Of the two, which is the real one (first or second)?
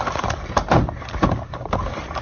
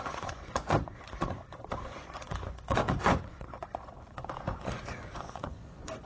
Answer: first